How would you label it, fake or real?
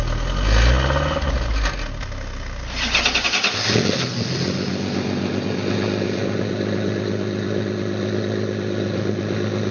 real